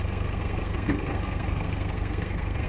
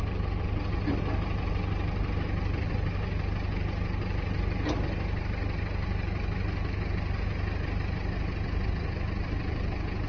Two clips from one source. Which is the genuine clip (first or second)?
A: second